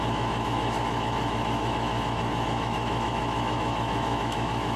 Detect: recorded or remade remade